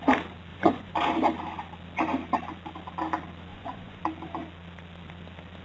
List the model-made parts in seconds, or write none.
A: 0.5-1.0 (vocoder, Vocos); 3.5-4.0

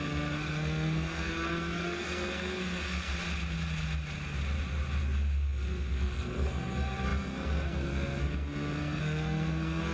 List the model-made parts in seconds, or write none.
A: 0.0-3.1 (codec, SNAC); 5.0-9.9